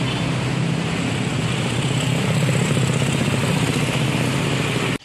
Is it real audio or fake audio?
real